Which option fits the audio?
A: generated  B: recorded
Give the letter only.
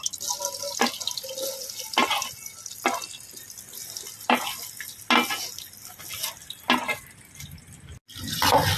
B